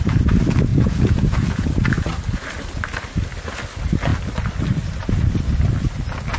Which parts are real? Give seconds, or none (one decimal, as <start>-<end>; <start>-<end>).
0.0-0.7; 1.7-6.4